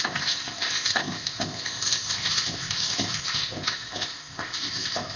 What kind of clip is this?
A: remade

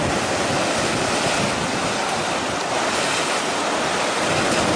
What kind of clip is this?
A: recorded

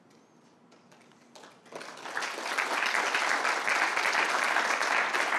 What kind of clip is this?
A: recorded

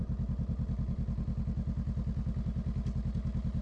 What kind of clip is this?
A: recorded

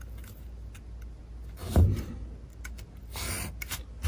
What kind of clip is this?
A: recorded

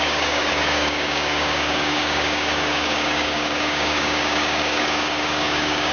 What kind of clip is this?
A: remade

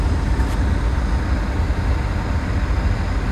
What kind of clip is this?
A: recorded